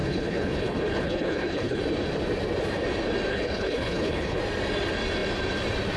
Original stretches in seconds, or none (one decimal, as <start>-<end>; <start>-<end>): 1.8-3.3; 4.4-6.0